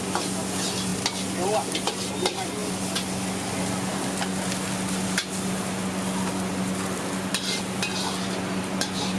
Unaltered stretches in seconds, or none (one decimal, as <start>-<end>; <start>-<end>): 0.0-9.2